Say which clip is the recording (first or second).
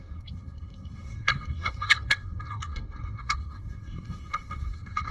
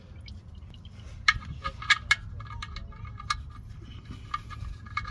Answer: second